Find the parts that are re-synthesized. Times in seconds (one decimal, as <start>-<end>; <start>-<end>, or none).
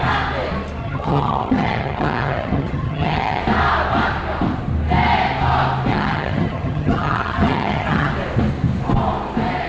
0.8-3.4; 5.9-8.1